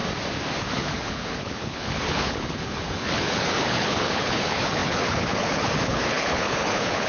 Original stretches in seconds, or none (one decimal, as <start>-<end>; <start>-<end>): 0.0-0.6